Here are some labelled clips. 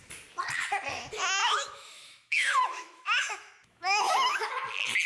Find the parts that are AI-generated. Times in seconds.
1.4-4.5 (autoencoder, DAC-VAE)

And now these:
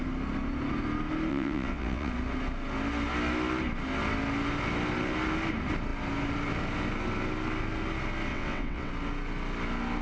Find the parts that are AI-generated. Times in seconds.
1.3-2.1 (vocoder, WaveNeXt); 8.3-8.9

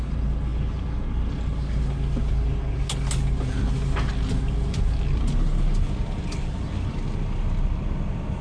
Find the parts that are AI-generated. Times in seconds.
none

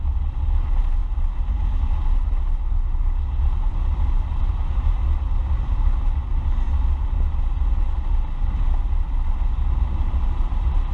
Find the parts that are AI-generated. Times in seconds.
3.7-5.0 (vocoder, BigVGAN v2)

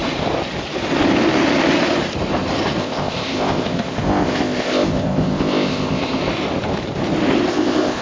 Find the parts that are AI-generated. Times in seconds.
2.8-6.2 (codec, ZipCodec); 7.5-8.0

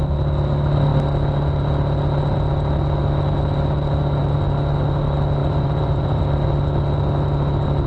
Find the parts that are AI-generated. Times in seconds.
5.4-6.2 (vocoder, BigVGAN v2)

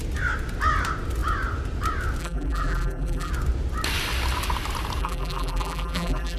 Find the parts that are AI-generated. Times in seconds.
2.2-3.3 (vocoder, BigVGAN v2); 5.0-6.4